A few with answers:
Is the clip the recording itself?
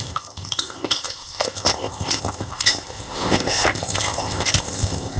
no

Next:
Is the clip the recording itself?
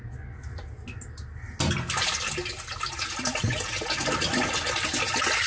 yes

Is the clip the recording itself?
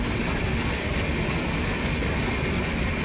yes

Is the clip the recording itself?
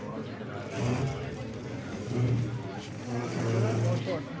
yes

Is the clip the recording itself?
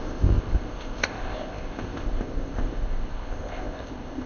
no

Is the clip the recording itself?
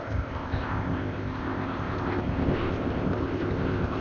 no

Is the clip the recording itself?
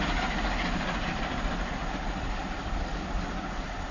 yes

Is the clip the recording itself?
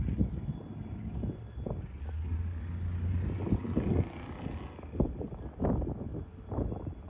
yes